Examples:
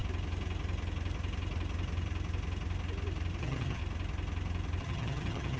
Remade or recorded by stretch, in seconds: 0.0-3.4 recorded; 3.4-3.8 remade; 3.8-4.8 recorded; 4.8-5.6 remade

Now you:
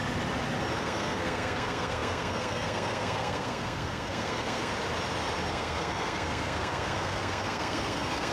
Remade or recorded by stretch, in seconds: 0.0-0.8 recorded; 0.8-4.7 remade; 4.7-5.5 recorded; 5.5-8.3 remade